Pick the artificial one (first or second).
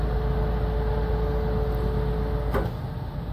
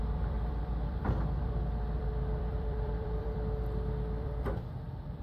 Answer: second